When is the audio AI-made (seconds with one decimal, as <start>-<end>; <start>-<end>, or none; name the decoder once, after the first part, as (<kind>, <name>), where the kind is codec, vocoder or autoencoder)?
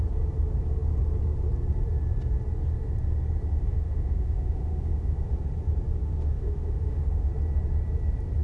3.5-5.3 (autoencoder, DAC-VAE); 6.0-7.3